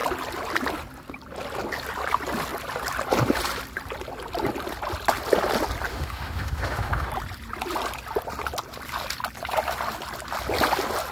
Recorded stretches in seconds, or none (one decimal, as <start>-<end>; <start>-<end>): 0.0-5.9; 7.1-11.1

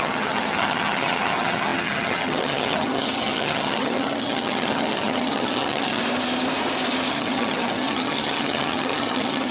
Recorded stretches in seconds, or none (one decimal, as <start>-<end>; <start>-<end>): 6.0-7.1